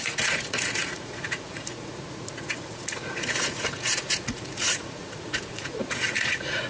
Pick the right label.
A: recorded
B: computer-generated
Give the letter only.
B